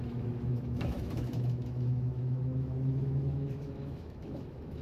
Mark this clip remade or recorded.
remade